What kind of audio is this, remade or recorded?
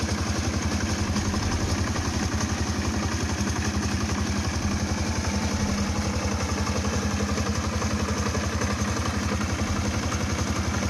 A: recorded